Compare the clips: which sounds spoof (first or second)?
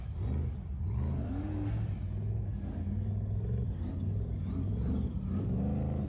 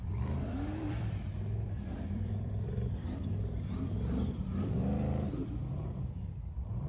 second